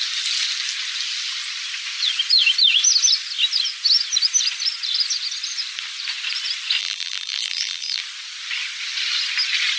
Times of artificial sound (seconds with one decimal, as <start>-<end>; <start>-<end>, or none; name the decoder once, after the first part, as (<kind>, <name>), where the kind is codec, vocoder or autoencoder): 6.8-8.0 (vocoder, BigVGAN v2)